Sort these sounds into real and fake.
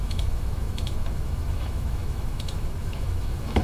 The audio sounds fake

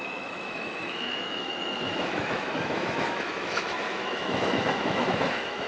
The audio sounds fake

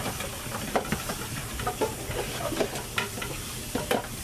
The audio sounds real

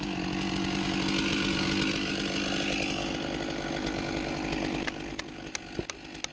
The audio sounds real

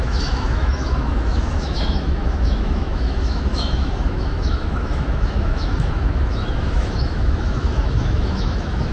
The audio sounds fake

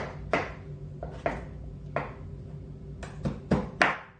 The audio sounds real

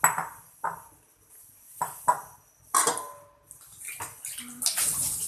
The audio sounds real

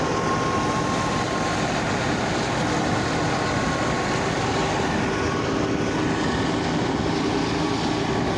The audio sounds real